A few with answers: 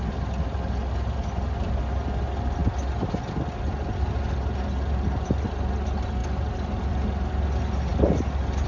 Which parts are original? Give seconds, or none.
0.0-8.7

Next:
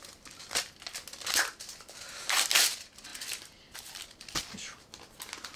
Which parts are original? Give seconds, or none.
0.0-5.6

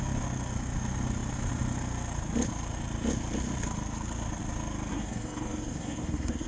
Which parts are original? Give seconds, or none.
0.0-4.9

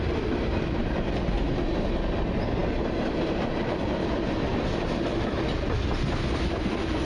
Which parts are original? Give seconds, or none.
0.0-7.0

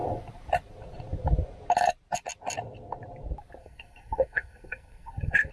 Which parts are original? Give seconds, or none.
0.0-3.6

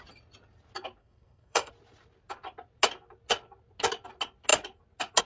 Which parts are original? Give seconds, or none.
0.0-1.0; 1.7-5.2

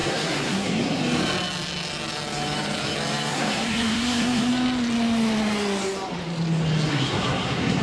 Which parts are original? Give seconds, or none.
1.0-3.3; 4.5-6.9

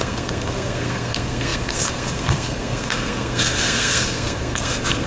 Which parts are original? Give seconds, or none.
none